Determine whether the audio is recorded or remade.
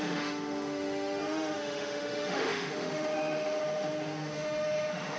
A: remade